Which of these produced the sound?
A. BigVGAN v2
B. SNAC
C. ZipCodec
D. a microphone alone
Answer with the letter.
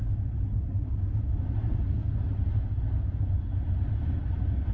D